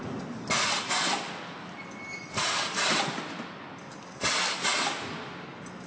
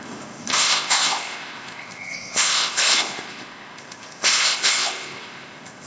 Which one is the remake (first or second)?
second